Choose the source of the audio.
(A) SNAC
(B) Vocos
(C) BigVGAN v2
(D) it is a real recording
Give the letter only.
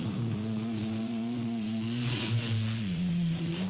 B